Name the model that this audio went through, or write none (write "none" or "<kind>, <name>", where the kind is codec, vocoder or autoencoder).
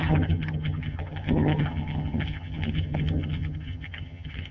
vocoder, HiFi-GAN